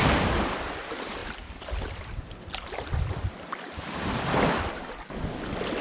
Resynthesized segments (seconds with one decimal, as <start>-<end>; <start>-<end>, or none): none

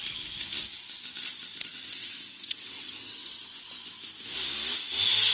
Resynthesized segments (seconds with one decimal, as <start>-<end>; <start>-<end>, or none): 1.7-3.7

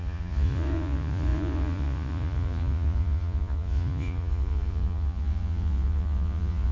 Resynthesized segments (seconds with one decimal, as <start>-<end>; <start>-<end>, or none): 0.0-6.7

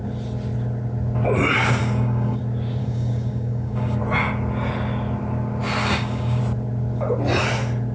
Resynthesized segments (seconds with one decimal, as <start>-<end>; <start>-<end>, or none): 1.8-2.4; 2.8-4.0; 5.8-6.4

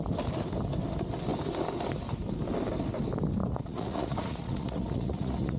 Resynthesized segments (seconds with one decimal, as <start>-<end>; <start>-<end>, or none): 3.4-5.6

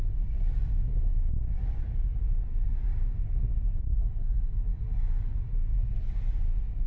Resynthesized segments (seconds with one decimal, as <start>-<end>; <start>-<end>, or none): none

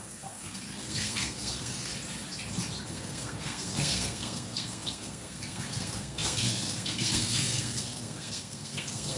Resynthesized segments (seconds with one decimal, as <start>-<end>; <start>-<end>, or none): 0.0-1.9; 2.9-9.2